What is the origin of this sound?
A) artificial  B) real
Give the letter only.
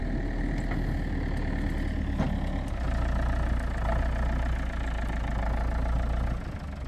B